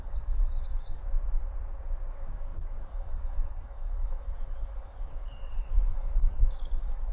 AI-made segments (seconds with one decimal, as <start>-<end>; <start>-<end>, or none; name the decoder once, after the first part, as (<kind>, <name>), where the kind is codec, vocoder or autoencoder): 0.0-1.0 (codec, DAC); 2.1-7.1